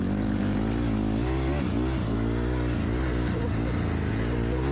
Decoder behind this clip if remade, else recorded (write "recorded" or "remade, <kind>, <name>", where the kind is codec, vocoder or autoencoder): recorded